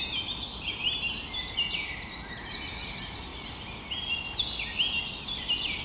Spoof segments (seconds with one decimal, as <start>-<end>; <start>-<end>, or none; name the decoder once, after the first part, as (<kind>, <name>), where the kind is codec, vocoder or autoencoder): 0.5-2.6 (vocoder, BigVGAN v2)